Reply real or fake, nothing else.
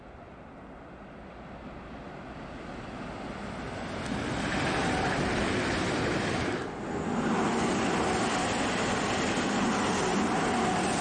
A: real